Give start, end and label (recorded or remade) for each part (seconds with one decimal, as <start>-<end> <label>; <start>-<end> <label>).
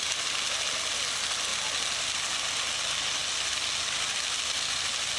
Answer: 0.0-5.2 recorded